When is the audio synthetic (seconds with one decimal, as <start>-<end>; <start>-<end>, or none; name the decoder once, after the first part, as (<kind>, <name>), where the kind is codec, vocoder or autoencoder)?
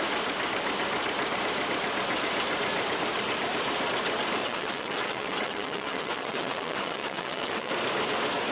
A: 4.4-7.7 (vocoder, WaveNeXt)